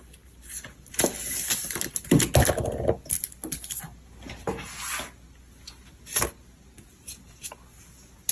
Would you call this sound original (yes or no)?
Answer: yes